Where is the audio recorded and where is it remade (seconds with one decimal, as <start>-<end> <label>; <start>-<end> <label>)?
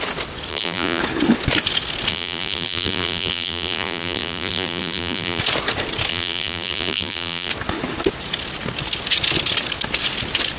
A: 0.0-0.5 recorded; 0.5-1.0 remade; 1.0-2.1 recorded; 2.1-5.4 remade; 5.4-6.1 recorded; 6.1-7.5 remade; 7.5-10.6 recorded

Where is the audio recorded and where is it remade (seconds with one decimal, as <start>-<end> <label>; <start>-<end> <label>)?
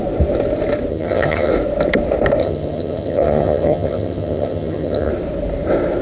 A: 0.0-0.9 recorded; 0.9-1.5 remade; 1.5-2.4 recorded; 2.4-5.1 remade; 5.1-6.0 recorded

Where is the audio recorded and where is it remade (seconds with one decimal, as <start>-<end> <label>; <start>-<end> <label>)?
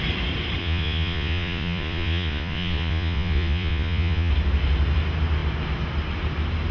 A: 0.0-0.6 recorded; 0.6-4.3 remade; 4.3-6.7 recorded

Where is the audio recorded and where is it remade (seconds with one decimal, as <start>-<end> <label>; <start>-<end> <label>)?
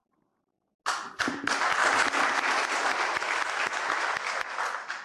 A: 0.0-5.0 recorded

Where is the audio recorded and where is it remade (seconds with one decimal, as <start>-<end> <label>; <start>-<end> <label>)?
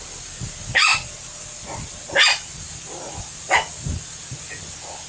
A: 0.0-5.1 recorded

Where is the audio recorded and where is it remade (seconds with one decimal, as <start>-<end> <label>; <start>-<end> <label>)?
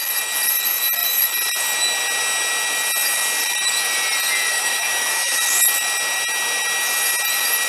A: 0.0-4.5 recorded; 4.5-5.4 remade; 5.4-7.7 recorded